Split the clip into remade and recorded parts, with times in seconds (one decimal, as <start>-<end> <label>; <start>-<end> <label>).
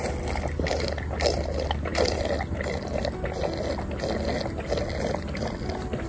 0.0-6.1 recorded